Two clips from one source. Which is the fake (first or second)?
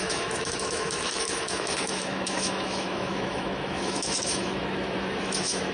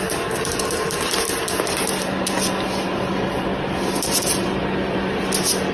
first